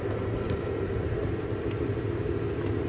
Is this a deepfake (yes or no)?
no